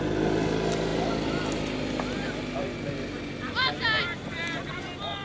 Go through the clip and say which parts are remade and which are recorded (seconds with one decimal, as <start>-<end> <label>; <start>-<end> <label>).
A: 0.0-5.2 recorded

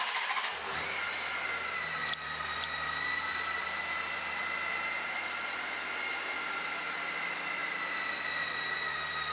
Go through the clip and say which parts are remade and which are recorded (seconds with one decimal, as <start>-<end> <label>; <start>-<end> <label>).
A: 0.0-9.3 recorded